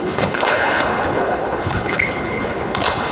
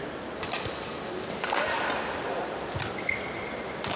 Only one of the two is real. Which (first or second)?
second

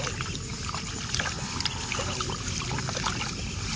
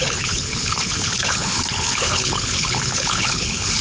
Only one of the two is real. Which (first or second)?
first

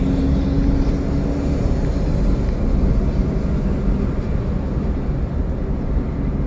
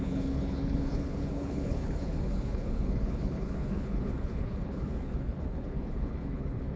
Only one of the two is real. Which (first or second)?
first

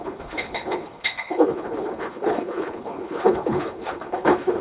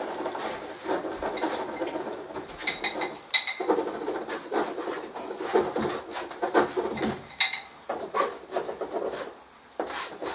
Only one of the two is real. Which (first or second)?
second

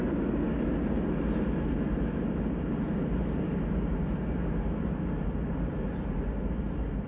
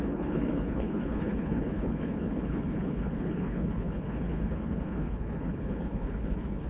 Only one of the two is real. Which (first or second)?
first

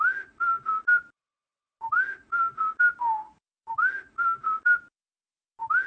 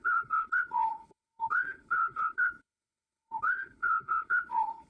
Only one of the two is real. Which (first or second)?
first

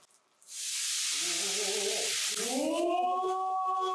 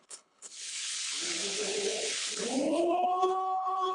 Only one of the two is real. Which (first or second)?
first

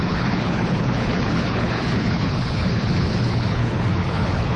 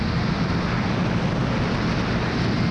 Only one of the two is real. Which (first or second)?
second